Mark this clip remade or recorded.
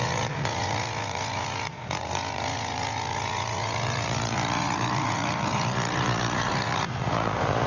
remade